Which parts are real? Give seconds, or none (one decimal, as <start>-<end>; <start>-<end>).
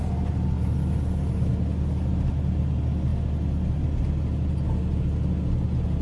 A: 0.0-6.0